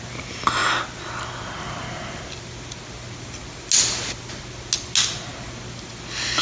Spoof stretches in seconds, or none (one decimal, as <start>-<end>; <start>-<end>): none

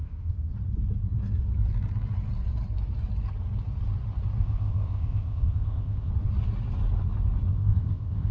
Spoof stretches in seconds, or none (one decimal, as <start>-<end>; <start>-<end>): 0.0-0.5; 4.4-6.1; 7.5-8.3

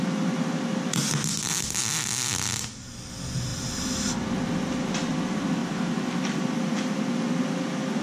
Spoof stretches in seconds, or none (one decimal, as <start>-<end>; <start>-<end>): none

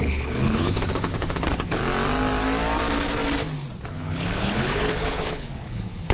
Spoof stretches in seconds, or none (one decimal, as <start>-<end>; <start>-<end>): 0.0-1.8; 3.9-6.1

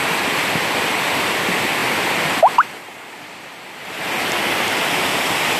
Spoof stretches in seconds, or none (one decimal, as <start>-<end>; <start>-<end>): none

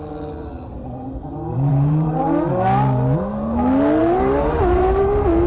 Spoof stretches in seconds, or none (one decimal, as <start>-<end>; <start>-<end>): 1.7-2.5; 4.0-5.5

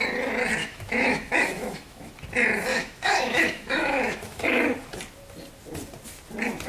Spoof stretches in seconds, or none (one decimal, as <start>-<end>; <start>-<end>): 0.6-2.1; 2.7-4.6

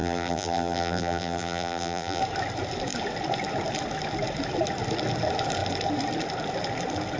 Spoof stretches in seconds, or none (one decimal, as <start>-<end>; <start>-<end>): 0.0-2.2